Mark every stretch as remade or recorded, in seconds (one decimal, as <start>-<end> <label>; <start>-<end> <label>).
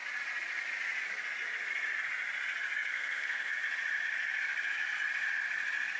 0.0-2.9 recorded; 2.9-3.5 remade; 3.5-6.0 recorded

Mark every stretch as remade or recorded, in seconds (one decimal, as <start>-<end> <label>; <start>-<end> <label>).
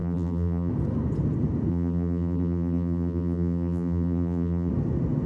0.0-0.7 remade; 0.7-1.7 recorded; 1.7-4.7 remade; 4.7-5.3 recorded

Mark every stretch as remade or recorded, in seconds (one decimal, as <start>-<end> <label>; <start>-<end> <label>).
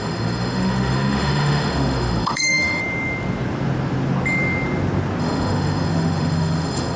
0.0-2.8 remade; 2.8-5.2 recorded; 5.2-7.0 remade